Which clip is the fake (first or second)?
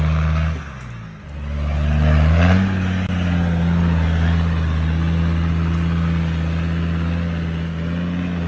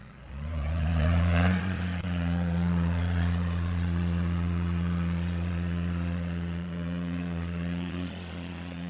second